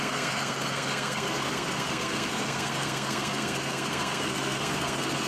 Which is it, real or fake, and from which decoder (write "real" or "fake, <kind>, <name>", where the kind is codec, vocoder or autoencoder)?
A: fake, codec, SNAC